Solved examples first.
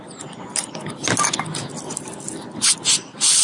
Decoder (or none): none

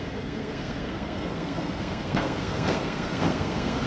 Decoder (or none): codec, SNAC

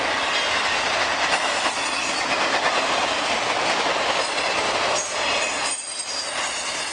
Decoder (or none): none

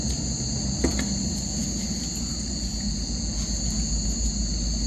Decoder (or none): none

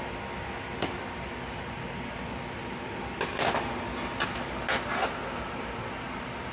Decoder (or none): none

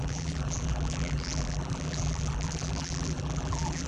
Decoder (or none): vocoder, BigVGAN v2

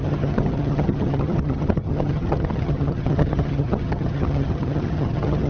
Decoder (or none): vocoder, HiFi-GAN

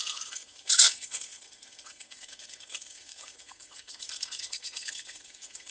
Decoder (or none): codec, SNAC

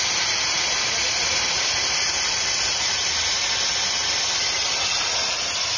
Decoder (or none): none